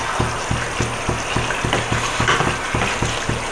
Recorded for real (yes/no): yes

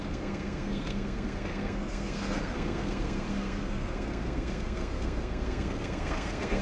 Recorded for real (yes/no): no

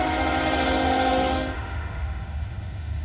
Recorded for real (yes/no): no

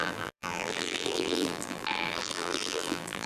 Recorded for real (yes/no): no